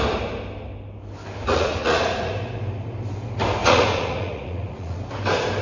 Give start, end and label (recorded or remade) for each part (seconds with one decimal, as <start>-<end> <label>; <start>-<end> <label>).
0.0-1.5 recorded; 1.5-2.3 remade; 2.3-3.6 recorded; 3.6-5.0 remade; 5.0-5.6 recorded